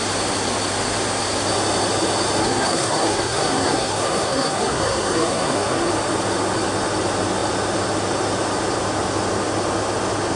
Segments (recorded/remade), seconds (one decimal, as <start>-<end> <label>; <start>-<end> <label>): 0.0-2.4 recorded; 2.4-5.9 remade; 5.9-10.4 recorded